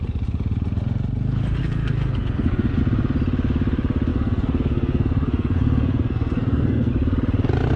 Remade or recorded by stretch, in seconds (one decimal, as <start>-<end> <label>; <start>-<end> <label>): 0.0-1.6 recorded; 1.6-2.8 remade; 2.8-4.1 recorded; 4.1-6.9 remade; 6.9-7.8 recorded